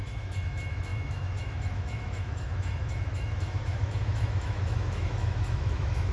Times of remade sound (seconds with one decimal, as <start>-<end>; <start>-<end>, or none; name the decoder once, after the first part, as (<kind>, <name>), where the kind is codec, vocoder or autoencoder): 0.0-6.1 (autoencoder, DAC-VAE)